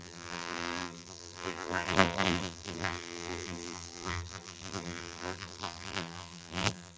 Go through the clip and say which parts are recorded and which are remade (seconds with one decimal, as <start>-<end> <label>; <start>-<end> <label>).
0.0-7.0 remade